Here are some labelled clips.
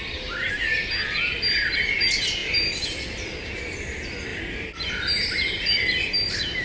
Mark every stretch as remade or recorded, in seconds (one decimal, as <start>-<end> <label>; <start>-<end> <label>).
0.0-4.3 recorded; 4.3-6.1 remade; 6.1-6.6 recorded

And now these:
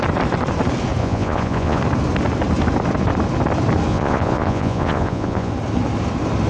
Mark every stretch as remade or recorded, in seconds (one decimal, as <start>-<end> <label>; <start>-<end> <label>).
0.0-1.0 recorded; 1.0-1.8 remade; 1.8-3.9 recorded; 3.9-5.5 remade; 5.5-6.5 recorded

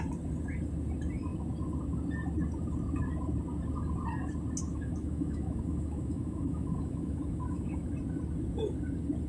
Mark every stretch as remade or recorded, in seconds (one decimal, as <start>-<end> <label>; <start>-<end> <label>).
0.0-4.7 recorded; 4.7-7.9 remade; 7.9-9.3 recorded